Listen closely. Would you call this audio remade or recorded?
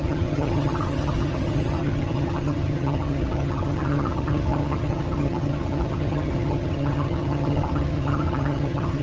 remade